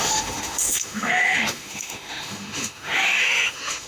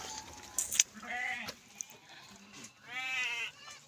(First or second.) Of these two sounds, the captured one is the second